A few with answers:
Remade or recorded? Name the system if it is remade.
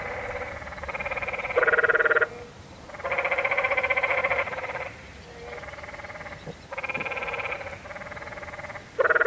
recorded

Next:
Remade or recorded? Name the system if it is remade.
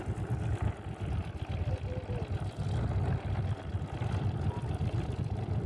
recorded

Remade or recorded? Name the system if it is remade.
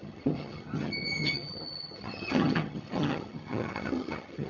remade, vocoder, HiFi-GAN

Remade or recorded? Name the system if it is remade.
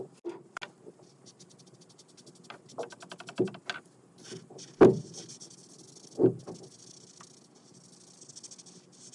recorded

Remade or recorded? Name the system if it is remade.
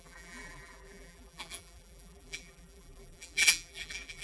remade, vocoder, BigVGAN v2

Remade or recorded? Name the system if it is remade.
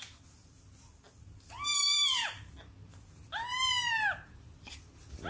recorded